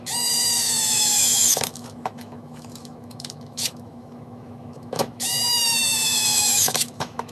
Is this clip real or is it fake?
fake